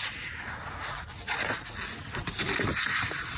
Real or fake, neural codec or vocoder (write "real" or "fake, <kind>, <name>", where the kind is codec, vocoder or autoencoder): real